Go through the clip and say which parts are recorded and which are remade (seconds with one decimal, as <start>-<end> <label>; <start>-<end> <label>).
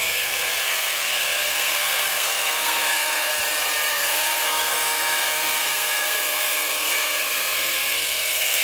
0.0-3.3 remade; 3.3-3.9 recorded; 3.9-8.6 remade